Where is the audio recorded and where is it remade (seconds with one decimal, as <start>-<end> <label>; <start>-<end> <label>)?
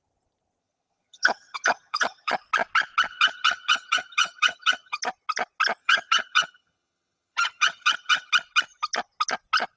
0.0-0.6 recorded; 0.6-2.3 remade; 2.3-3.1 recorded; 3.1-5.0 remade; 5.0-5.8 recorded; 5.8-8.3 remade; 8.3-9.8 recorded